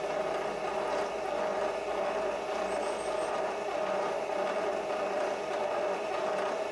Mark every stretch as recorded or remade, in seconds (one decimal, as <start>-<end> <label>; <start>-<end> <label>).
0.0-6.7 recorded